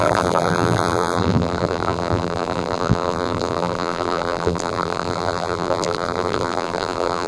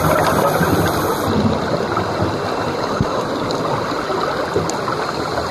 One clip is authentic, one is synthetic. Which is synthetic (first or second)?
first